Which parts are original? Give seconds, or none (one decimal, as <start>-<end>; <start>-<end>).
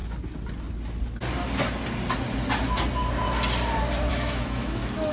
0.0-4.1